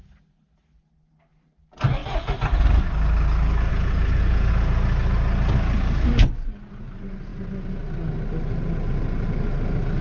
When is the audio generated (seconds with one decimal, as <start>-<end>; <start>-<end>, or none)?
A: 3.7-4.5